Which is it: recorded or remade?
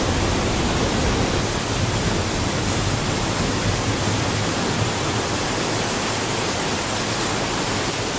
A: recorded